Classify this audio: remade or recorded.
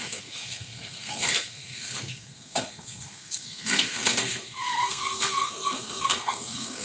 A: remade